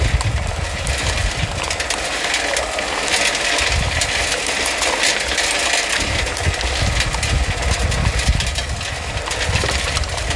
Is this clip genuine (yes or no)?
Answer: yes